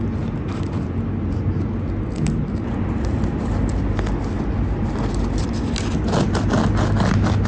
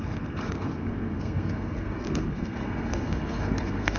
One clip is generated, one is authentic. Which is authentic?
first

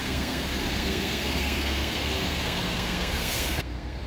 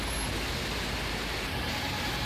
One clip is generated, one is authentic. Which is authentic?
second